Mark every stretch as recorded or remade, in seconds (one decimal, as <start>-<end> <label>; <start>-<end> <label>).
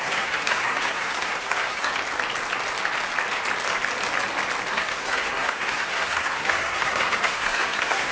0.0-1.9 remade; 1.9-4.7 recorded; 4.7-8.1 remade